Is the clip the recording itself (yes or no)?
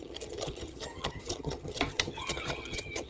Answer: no